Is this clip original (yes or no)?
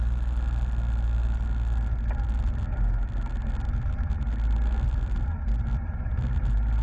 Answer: yes